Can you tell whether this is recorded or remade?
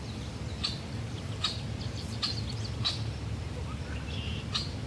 recorded